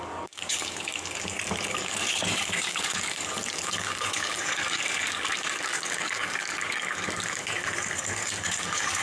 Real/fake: fake